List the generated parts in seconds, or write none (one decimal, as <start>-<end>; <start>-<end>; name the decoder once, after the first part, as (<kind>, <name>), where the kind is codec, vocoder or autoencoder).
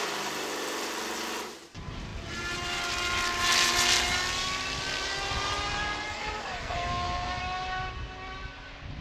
6.1-7.4 (codec, SNAC)